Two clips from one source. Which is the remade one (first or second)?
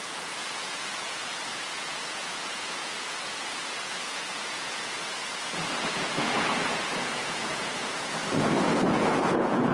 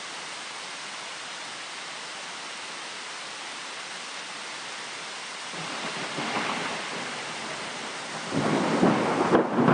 first